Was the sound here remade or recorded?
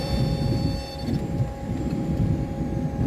remade